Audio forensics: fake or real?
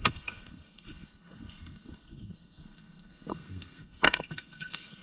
fake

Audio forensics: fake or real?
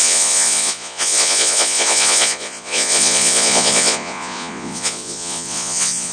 fake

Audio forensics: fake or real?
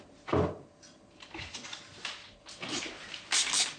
real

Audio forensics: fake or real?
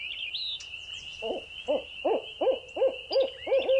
real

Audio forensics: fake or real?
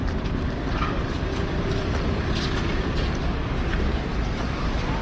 real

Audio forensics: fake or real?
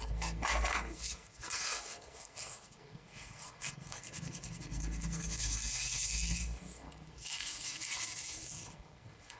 fake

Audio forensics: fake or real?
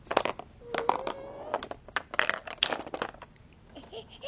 real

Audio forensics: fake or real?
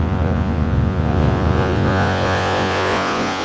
fake